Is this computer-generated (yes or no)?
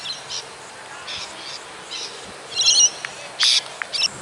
no